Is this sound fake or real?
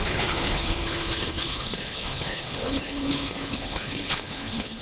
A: fake